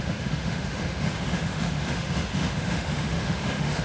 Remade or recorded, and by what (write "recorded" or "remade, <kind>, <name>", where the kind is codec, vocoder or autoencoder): remade, autoencoder, DAC-VAE